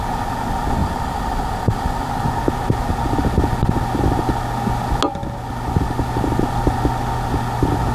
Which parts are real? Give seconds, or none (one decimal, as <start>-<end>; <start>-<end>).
0.0-0.8; 2.1-7.9